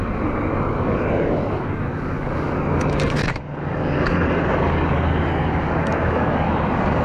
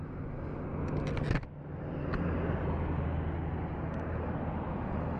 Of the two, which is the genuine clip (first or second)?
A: second